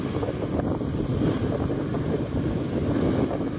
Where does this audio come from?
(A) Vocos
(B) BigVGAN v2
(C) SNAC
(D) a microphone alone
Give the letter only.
D